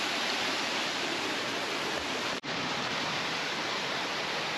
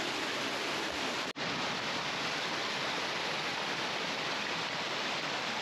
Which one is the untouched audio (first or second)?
second